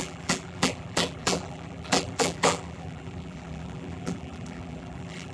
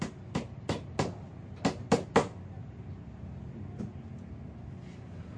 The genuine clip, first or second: second